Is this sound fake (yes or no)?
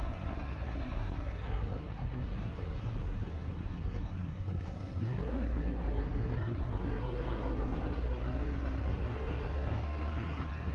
yes